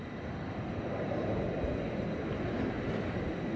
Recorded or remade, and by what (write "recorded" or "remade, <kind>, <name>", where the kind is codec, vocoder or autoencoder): recorded